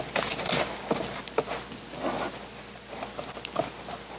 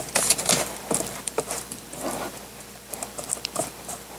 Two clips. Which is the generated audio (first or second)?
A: second